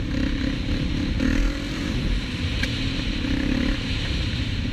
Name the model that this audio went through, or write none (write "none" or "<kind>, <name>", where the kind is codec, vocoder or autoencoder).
vocoder, BigVGAN v2